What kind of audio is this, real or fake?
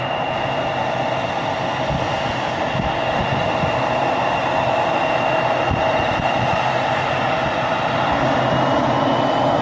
real